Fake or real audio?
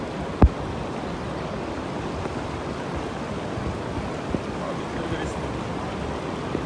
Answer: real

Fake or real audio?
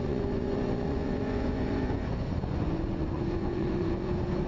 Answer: fake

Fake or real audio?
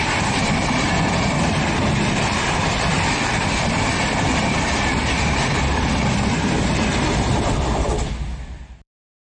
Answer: fake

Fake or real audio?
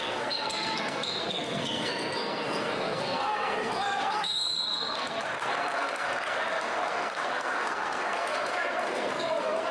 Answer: fake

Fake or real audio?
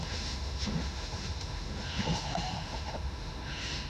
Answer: fake